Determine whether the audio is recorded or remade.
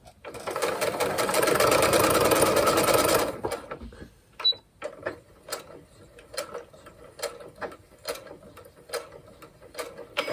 recorded